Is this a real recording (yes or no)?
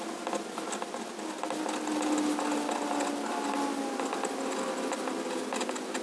yes